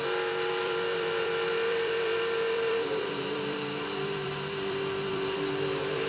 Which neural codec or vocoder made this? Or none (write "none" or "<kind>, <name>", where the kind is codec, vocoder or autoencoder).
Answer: vocoder, BigVGAN v2